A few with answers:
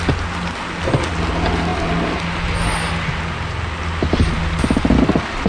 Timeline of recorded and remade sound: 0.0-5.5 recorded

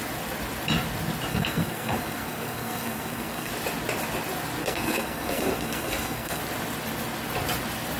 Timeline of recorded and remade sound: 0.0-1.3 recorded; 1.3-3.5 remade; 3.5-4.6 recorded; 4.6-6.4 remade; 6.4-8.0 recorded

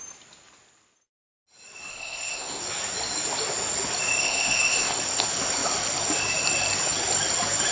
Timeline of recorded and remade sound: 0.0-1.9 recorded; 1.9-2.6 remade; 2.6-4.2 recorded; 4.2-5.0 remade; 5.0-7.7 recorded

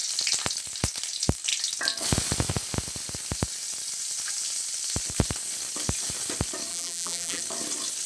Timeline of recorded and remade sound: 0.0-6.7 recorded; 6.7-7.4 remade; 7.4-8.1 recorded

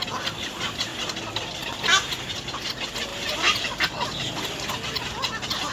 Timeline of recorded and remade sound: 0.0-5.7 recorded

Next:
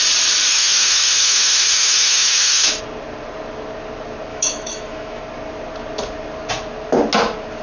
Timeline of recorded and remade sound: 0.0-0.5 recorded; 0.5-2.8 remade; 2.8-4.3 recorded; 4.3-5.2 remade; 5.2-7.6 recorded

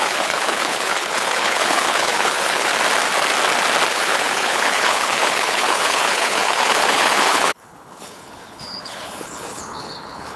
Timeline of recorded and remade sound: 0.0-2.7 remade; 2.7-3.9 recorded; 3.9-10.4 remade

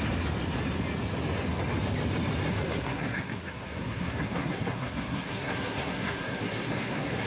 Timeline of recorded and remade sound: 0.0-2.5 recorded; 2.5-7.3 remade